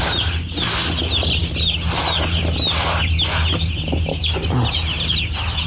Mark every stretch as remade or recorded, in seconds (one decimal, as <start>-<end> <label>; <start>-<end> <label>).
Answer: 0.0-5.7 recorded